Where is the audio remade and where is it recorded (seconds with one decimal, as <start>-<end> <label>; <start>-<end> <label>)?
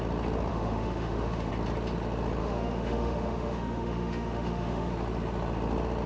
0.0-0.5 recorded; 0.5-1.5 remade; 1.5-2.4 recorded; 2.4-4.9 remade; 4.9-6.1 recorded